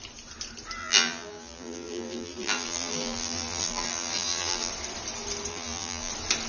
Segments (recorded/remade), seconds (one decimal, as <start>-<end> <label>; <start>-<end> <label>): 0.0-0.8 recorded; 0.8-4.7 remade; 4.7-5.5 recorded; 5.5-6.1 remade; 6.1-6.5 recorded